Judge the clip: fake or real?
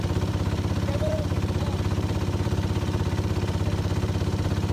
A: fake